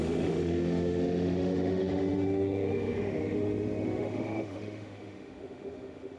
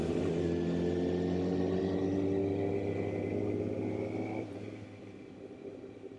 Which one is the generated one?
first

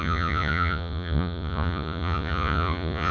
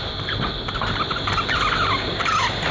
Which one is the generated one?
first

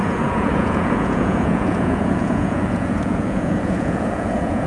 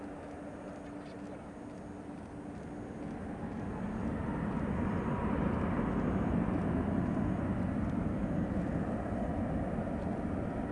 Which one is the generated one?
first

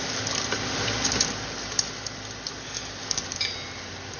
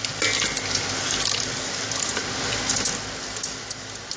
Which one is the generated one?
first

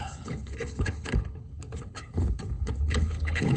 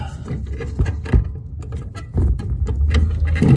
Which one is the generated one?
first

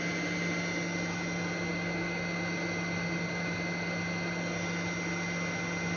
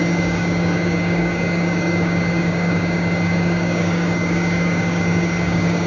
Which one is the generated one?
second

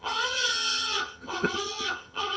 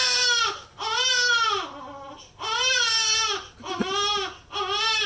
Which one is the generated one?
first